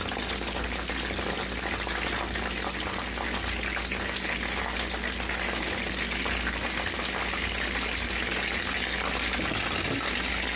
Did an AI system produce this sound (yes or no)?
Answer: no